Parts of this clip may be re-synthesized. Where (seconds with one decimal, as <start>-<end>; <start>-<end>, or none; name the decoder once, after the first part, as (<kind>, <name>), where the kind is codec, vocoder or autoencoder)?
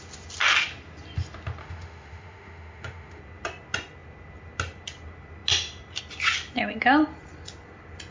1.6-3.2 (autoencoder, DAC-VAE)